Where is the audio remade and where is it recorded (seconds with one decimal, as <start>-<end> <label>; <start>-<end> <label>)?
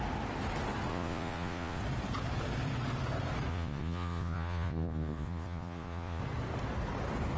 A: 0.0-0.9 recorded; 0.9-1.8 remade; 1.8-3.5 recorded; 3.5-6.2 remade; 6.2-7.4 recorded